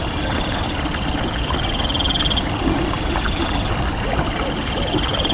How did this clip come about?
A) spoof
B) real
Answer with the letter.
B